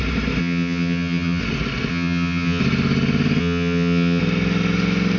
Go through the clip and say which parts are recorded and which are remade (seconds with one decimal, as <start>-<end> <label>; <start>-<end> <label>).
0.0-0.4 recorded; 0.4-1.4 remade; 1.4-1.9 recorded; 1.9-2.6 remade; 2.6-3.4 recorded; 3.4-4.2 remade; 4.2-5.2 recorded